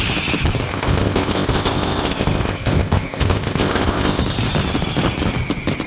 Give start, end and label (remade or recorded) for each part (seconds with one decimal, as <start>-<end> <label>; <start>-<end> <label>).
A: 0.0-0.7 recorded; 0.7-4.2 remade; 4.2-5.9 recorded